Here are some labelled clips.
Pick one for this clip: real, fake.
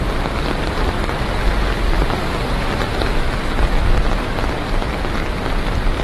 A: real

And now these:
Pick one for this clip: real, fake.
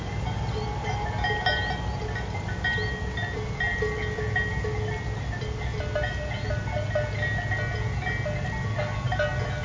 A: real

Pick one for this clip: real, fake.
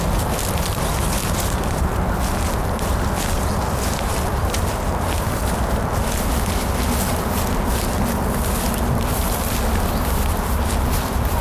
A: real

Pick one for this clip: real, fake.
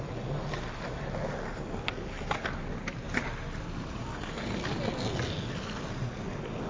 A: real